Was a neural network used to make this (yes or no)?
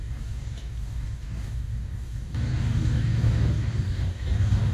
yes